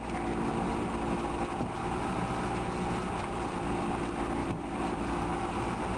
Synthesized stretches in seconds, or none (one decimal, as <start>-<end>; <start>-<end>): 1.8-2.3; 4.4-5.0